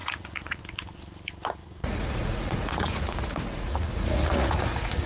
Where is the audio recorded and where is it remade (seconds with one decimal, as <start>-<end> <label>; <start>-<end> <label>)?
0.0-0.6 remade; 0.6-1.6 recorded; 1.6-5.1 remade

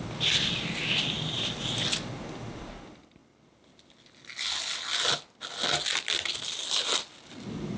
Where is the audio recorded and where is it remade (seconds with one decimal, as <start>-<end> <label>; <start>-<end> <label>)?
0.0-7.8 recorded